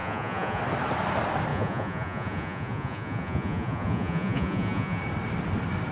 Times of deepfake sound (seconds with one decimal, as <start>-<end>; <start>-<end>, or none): 0.0-0.6; 1.5-5.0